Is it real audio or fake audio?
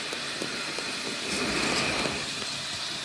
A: real